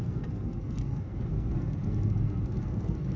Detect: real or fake fake